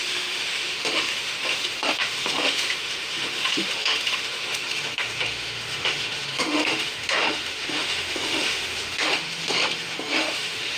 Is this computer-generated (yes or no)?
yes